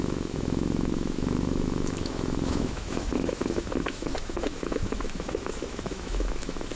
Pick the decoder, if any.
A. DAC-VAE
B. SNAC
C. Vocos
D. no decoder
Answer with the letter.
A